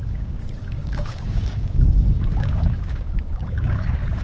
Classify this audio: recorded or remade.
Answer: remade